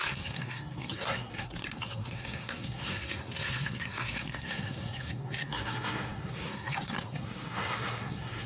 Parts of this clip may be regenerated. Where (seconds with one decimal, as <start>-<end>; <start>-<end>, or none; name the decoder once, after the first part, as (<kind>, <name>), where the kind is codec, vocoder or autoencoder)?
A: 0.0-8.5 (codec, SNAC)